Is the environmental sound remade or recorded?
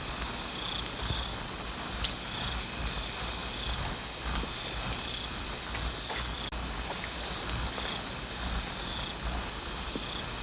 recorded